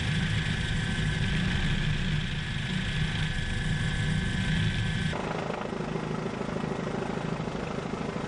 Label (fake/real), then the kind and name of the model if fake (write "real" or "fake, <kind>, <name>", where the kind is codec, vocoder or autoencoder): real